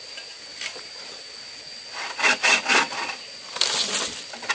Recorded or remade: recorded